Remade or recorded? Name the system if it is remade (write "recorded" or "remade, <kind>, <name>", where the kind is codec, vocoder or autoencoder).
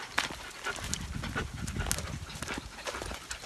recorded